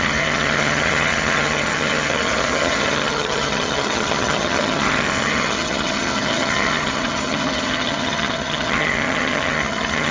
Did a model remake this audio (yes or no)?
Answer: yes